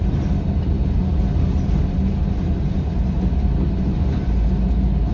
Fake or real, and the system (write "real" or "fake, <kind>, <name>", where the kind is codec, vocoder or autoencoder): real